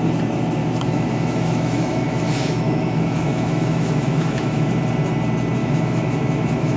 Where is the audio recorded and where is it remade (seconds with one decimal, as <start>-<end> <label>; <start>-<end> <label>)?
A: 0.0-0.6 recorded; 0.6-4.7 remade; 4.7-5.6 recorded; 5.6-6.8 remade